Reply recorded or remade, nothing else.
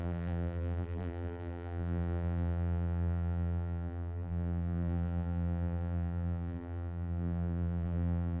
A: remade